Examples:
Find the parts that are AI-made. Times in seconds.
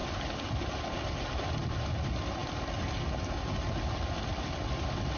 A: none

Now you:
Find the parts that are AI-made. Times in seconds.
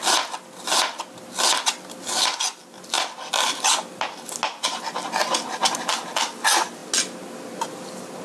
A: none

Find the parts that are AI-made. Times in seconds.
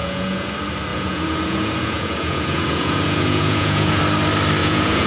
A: 0.0-0.5 (vocoder, Vocos); 0.9-4.0; 4.6-5.1